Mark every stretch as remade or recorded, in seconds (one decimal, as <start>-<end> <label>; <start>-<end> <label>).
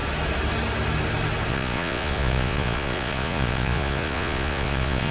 0.0-1.5 recorded; 1.5-5.1 remade